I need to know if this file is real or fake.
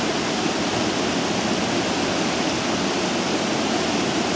real